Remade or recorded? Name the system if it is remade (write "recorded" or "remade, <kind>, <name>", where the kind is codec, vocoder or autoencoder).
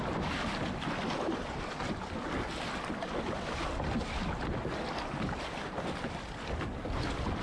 recorded